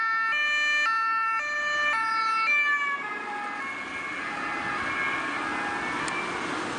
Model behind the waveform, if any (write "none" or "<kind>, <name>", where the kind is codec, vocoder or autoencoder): none